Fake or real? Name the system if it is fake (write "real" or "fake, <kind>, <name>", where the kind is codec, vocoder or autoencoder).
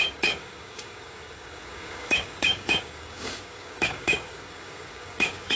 fake, codec, DAC